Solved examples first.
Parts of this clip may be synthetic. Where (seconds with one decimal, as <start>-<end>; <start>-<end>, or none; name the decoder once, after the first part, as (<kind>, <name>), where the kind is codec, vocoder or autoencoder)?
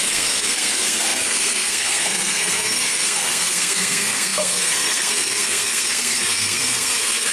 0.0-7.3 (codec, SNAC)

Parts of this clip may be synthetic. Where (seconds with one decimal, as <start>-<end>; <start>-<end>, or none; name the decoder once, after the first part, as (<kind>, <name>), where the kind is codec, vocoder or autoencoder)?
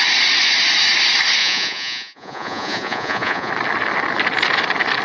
1.4-3.5 (vocoder, Vocos)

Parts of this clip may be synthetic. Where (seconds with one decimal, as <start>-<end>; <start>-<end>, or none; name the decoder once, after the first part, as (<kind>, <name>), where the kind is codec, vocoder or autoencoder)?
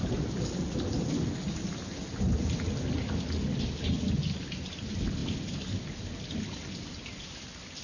none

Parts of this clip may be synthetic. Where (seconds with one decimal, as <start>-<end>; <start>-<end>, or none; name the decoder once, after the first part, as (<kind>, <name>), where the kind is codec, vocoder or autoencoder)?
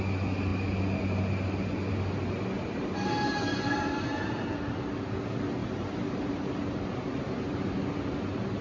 5.6-7.1 (vocoder, BigVGAN v2)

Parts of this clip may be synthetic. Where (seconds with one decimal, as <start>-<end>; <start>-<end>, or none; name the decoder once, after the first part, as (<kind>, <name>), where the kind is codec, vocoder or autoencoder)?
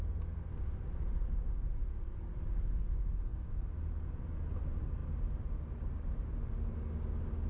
none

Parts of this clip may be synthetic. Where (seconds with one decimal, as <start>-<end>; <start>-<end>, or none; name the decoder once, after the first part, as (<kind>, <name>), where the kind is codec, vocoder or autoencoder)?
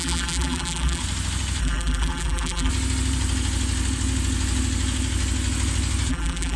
0.0-1.0 (vocoder, BigVGAN v2); 1.6-2.7; 6.1-6.6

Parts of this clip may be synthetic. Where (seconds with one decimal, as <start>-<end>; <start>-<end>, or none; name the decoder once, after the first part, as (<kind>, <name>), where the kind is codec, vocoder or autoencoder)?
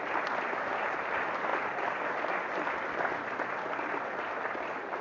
none